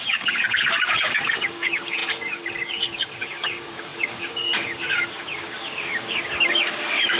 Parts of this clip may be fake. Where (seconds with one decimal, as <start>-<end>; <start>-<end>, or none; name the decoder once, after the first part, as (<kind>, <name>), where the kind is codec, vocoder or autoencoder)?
0.0-7.2 (codec, DAC)